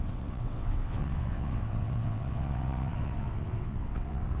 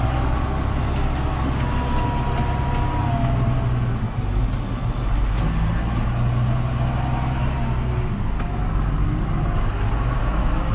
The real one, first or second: second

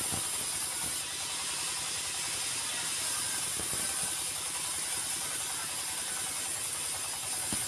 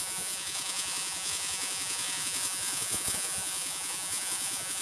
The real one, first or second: first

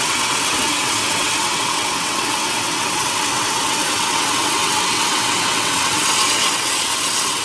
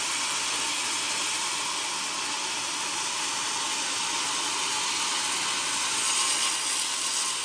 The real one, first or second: second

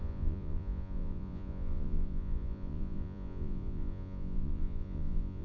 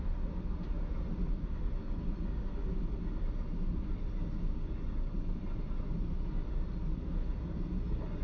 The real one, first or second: second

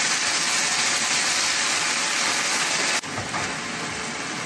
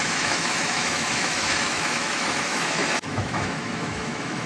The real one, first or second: first